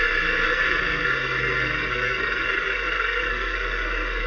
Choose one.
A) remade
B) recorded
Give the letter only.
A